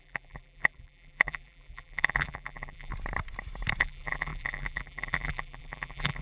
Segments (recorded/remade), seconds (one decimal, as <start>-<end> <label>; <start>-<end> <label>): 0.0-2.9 remade; 2.9-3.8 recorded; 3.8-6.2 remade